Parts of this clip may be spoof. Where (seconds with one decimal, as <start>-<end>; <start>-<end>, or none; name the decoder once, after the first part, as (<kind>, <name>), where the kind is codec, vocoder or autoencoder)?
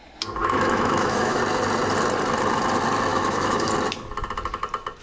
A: 0.4-1.4 (autoencoder, DAC-VAE); 3.1-3.7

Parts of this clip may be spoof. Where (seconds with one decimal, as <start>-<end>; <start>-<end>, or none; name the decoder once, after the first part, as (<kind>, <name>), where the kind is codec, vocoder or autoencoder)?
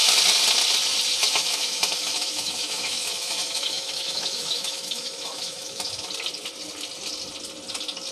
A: 1.2-6.1 (autoencoder, DAC-VAE)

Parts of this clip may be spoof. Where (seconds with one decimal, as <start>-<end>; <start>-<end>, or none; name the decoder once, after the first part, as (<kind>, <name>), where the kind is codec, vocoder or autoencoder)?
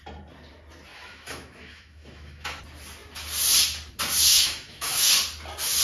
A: 0.9-2.6 (autoencoder, DAC-VAE); 4.3-5.1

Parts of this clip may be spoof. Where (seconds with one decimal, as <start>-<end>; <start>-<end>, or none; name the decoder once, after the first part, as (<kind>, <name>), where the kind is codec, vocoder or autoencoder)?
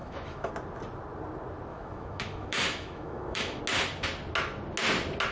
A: 0.0-0.5 (autoencoder, DAC-VAE); 1.7-3.6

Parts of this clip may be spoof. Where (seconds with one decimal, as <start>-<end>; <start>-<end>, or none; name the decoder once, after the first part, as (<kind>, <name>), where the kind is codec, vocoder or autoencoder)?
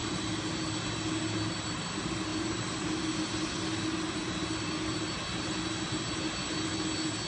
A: none